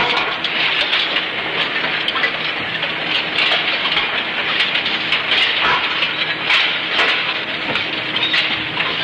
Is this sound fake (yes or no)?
no